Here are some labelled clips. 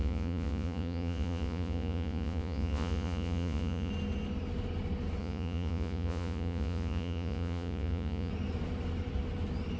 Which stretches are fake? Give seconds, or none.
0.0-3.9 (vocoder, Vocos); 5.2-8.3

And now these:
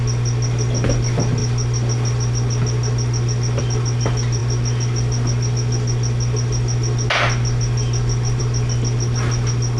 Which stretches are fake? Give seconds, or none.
none

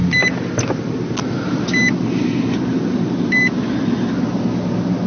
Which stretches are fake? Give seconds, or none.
none